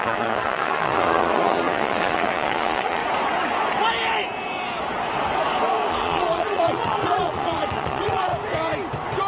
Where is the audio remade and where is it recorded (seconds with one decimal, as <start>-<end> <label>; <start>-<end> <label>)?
0.0-3.0 remade; 3.0-5.9 recorded; 5.9-8.3 remade; 8.3-9.3 recorded